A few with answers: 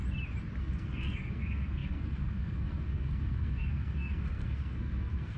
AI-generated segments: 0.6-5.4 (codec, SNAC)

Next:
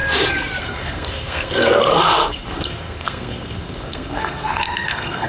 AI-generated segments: 0.6-5.3 (codec, SNAC)

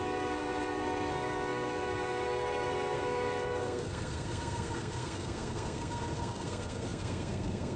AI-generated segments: 0.0-7.8 (codec, SNAC)

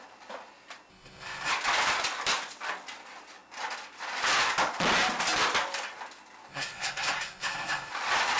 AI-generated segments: 0.9-1.5 (codec, SNAC); 6.5-7.9